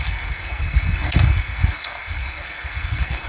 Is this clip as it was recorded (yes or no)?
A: no